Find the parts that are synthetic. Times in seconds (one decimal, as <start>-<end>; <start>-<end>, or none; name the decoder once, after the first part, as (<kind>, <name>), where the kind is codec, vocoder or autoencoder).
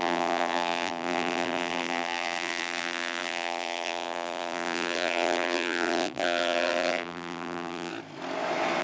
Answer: 0.0-7.9 (vocoder, BigVGAN v2)